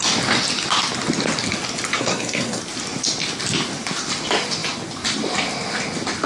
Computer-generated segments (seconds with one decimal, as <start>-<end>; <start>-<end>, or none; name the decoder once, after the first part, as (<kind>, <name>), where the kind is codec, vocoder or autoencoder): 2.0-2.6 (codec, SNAC)